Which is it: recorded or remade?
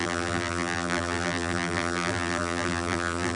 remade